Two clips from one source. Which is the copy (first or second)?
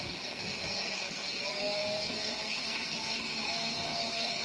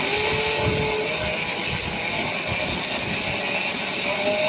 first